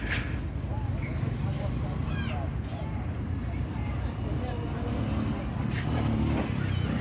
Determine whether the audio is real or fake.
real